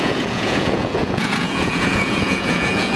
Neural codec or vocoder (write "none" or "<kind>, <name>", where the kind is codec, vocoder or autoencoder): vocoder, Vocos